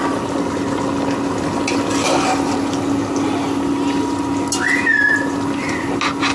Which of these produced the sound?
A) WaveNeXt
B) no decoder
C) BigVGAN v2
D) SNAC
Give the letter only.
B